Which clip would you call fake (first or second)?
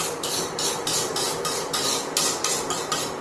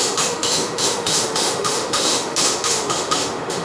second